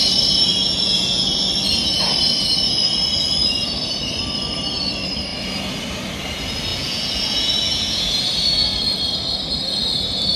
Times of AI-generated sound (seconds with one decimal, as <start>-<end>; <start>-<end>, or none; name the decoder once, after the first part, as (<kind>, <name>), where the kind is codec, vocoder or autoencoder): 0.5-1.3 (vocoder, Vocos); 6.7-8.2